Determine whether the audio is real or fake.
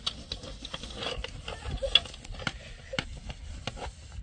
real